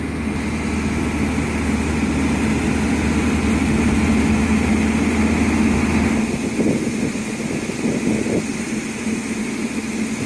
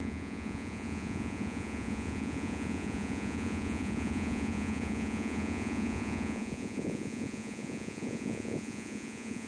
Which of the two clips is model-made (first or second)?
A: second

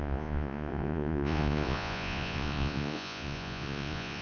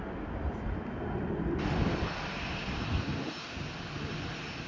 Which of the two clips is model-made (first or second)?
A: first